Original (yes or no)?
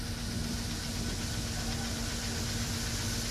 yes